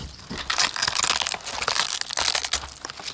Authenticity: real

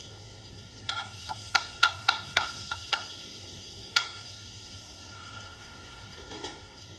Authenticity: fake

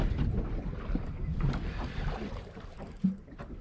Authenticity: real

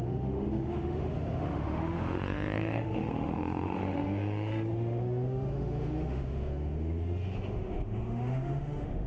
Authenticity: fake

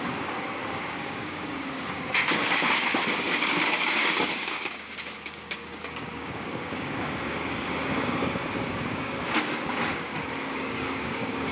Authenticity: fake